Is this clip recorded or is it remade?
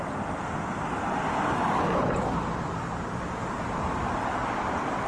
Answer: recorded